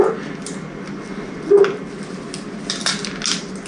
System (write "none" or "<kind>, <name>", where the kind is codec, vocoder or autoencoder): none